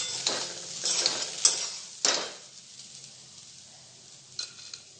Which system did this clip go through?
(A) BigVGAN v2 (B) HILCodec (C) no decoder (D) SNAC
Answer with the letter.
C